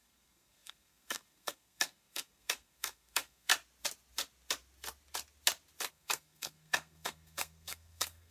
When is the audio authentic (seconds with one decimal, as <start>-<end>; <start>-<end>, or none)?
3.5-5.9